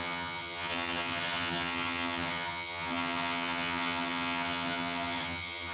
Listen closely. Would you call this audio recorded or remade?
remade